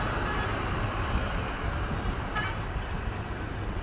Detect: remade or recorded recorded